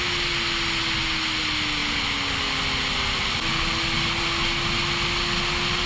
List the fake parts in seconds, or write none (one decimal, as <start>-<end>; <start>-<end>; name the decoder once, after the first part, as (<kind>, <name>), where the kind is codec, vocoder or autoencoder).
none